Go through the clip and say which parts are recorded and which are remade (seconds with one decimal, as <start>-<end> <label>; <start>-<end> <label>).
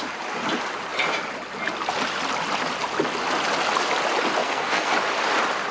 0.0-4.4 recorded; 4.4-4.9 remade; 4.9-5.7 recorded